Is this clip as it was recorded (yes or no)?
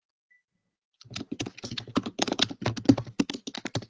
yes